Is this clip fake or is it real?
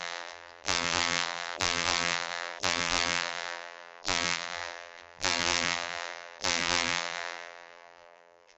fake